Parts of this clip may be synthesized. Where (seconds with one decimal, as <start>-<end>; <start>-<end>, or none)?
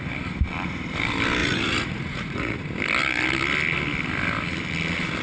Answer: 1.4-2.6